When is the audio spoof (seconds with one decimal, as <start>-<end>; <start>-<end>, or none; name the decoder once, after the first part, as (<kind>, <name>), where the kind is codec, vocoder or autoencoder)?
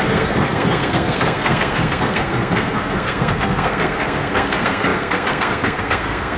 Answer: 0.0-6.4 (codec, SNAC)